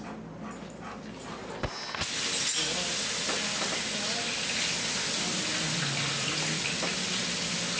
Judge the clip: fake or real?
real